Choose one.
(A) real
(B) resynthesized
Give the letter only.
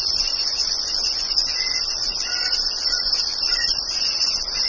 B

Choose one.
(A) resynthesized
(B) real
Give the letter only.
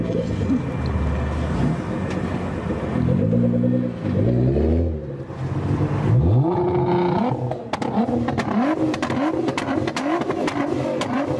B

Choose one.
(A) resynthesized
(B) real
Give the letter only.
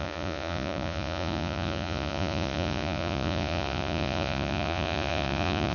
A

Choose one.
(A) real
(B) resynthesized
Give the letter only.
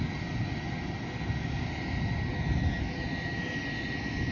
A